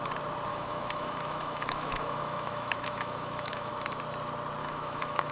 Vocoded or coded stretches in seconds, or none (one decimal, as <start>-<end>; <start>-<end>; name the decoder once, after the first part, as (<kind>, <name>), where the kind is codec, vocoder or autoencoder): 0.5-3.7 (autoencoder, DAC-VAE); 4.6-5.3